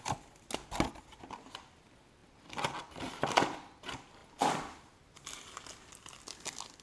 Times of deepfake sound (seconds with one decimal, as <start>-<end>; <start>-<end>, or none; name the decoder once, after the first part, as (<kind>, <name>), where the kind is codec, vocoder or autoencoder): none